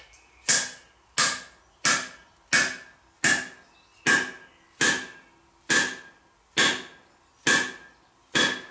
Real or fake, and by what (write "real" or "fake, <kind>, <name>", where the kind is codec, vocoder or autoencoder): real